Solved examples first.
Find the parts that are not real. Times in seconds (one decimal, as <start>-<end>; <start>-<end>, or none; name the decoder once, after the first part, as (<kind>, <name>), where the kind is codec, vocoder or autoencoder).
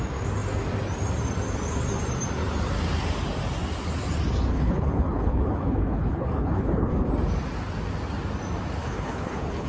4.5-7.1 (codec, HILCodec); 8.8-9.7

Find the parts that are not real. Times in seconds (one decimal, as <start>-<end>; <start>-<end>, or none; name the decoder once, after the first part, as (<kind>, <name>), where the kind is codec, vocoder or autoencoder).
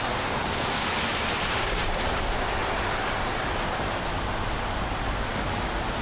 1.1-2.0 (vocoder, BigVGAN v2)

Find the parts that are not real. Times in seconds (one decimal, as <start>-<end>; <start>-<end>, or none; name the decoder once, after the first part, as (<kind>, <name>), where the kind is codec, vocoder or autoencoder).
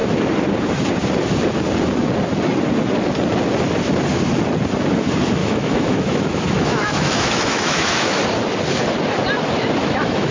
5.4-8.2 (autoencoder, DAC-VAE); 9.8-10.3